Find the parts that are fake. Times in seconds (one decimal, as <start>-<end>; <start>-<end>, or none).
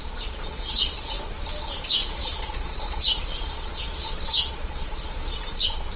0.0-1.1; 2.0-5.6